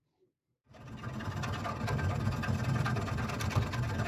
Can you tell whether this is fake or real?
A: real